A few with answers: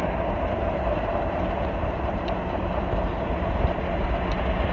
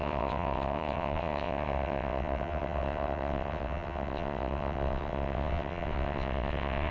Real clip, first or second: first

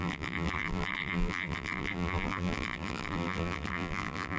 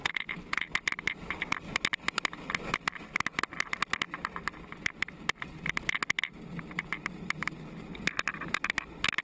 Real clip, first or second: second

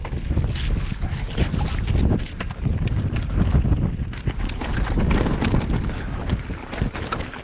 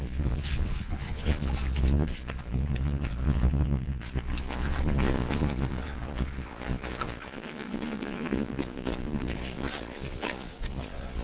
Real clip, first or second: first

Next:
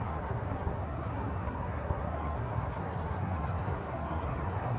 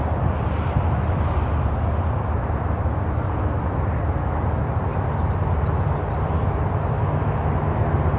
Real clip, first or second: second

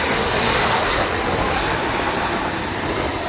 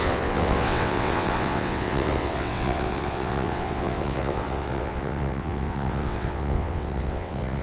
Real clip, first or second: first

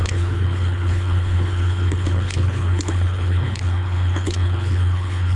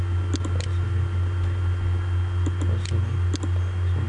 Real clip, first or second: second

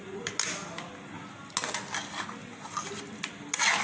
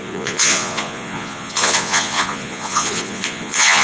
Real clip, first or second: first